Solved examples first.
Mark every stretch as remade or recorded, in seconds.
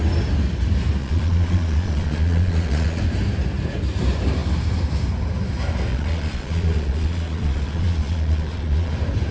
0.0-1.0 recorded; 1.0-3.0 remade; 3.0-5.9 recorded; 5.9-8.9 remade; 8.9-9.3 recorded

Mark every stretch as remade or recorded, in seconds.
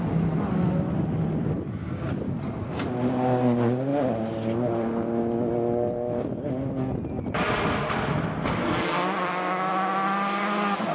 0.0-10.9 recorded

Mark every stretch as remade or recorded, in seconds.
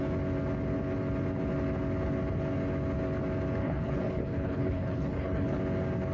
0.0-3.6 recorded; 3.6-5.6 remade; 5.6-6.1 recorded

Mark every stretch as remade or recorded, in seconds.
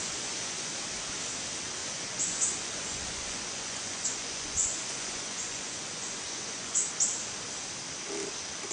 0.0-0.7 remade; 0.7-1.8 recorded; 1.8-6.9 remade; 6.9-8.7 recorded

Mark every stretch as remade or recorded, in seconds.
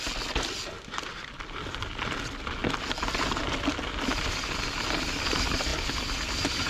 0.0-6.7 recorded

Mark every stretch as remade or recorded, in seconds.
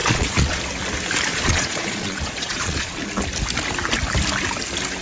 0.0-0.6 remade; 0.6-1.3 recorded; 1.3-3.0 remade; 3.0-5.0 recorded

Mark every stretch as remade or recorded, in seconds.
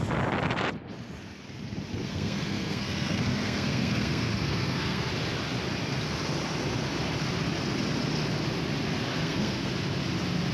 0.0-1.9 recorded; 1.9-5.1 remade; 5.1-9.1 recorded; 9.1-9.7 remade; 9.7-10.5 recorded